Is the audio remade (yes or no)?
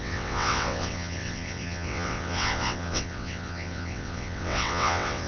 yes